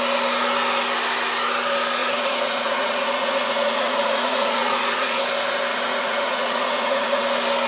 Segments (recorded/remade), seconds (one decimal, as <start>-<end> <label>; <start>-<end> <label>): 0.0-2.0 recorded; 2.0-5.2 remade; 5.2-5.7 recorded; 5.7-7.2 remade; 7.2-7.7 recorded